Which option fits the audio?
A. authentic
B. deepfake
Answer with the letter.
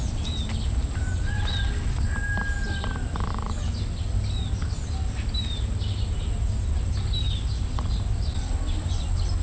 A